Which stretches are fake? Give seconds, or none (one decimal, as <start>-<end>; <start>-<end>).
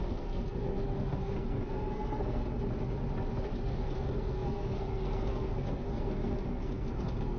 0.0-2.4; 3.8-7.4